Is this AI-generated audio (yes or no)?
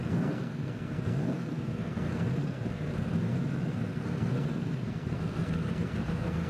yes